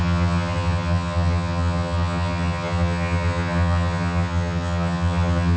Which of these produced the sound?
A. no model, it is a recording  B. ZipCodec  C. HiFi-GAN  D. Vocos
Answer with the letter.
C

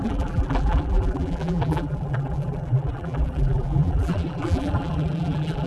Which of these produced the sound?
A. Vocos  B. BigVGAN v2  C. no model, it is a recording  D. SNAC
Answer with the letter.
B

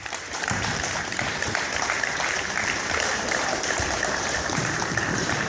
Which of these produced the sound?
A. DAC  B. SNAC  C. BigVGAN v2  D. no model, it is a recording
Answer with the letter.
C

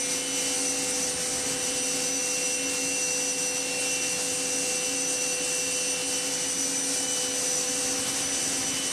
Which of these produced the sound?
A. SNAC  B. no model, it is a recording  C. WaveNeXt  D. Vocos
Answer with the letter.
B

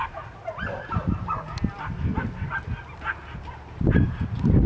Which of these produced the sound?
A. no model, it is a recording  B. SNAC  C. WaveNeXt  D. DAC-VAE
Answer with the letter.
A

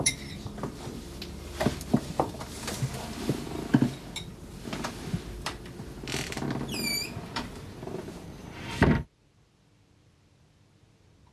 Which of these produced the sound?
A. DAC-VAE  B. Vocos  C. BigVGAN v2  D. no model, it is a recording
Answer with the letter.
C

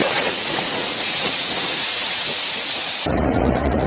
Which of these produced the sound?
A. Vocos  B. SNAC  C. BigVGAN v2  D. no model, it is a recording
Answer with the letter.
A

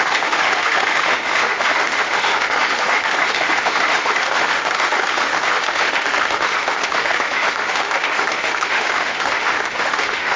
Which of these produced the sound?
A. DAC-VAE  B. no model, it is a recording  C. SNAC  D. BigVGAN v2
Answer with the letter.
A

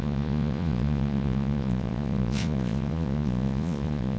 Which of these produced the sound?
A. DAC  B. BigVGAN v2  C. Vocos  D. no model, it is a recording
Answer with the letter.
C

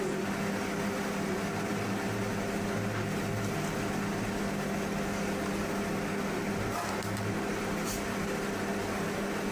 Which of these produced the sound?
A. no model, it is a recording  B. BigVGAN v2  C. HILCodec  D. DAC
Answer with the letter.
A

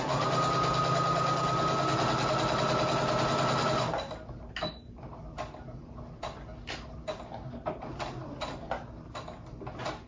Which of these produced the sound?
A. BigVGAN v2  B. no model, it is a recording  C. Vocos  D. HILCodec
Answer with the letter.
B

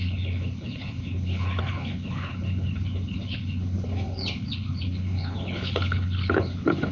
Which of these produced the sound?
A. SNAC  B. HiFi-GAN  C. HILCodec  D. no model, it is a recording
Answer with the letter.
C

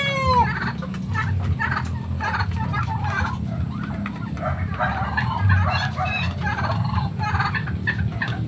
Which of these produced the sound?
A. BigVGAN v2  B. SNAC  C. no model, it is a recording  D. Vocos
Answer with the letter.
C